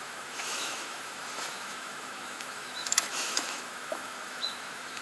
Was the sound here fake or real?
fake